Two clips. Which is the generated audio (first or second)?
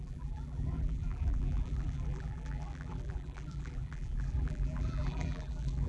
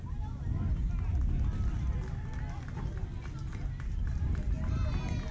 first